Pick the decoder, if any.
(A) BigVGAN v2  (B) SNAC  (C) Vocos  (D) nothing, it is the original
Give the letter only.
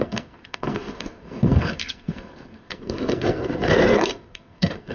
B